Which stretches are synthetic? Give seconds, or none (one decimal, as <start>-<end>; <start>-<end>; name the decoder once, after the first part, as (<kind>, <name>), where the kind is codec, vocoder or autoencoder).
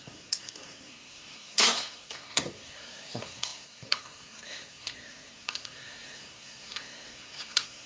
0.0-7.9 (codec, SNAC)